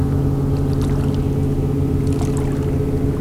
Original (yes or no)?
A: yes